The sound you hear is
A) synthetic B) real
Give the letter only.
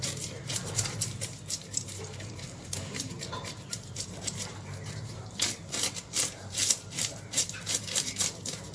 A